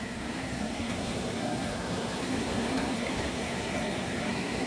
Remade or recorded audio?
remade